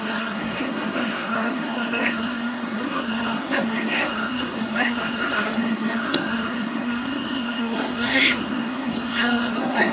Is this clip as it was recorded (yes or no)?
no